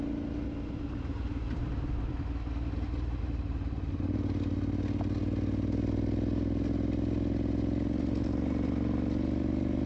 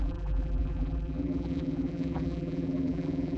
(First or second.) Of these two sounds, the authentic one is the first